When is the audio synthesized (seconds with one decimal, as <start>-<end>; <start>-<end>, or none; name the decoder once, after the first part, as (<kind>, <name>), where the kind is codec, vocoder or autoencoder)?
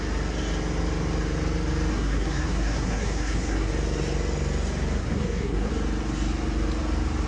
1.9-3.7 (codec, SNAC); 5.0-5.7